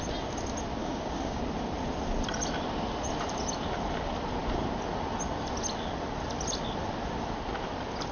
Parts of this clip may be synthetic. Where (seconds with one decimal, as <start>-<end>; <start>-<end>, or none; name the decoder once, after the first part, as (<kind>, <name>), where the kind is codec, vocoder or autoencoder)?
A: 0.8-1.4 (codec, DAC)